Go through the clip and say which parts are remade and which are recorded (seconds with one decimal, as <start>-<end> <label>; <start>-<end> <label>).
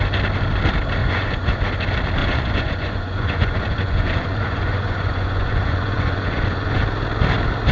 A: 0.0-1.0 recorded; 1.0-1.6 remade; 1.6-2.2 recorded; 2.2-6.8 remade; 6.8-7.7 recorded